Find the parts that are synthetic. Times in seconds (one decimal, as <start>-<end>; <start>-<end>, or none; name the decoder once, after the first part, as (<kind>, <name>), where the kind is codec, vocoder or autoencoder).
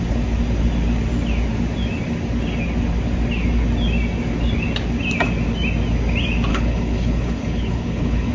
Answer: 6.5-8.3 (codec, HILCodec)